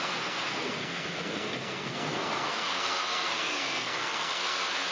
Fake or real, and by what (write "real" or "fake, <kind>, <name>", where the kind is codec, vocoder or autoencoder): fake, codec, SNAC